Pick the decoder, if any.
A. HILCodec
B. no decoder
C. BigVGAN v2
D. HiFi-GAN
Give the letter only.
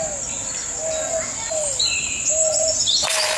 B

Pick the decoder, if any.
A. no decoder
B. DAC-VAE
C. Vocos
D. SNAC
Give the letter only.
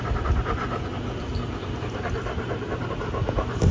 A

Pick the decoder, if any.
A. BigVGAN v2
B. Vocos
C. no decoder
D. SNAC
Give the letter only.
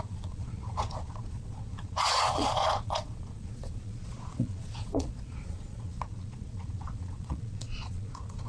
B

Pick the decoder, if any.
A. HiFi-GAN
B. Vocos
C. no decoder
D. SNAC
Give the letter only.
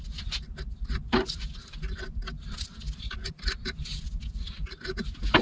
C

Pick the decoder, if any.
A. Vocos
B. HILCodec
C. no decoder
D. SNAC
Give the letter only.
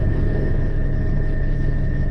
B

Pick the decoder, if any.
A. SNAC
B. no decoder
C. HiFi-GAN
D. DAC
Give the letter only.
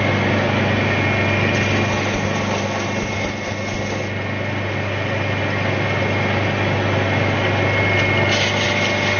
B